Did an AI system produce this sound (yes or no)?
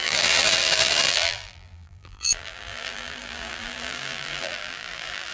yes